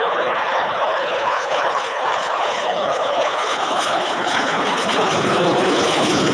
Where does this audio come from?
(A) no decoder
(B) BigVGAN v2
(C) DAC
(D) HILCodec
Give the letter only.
D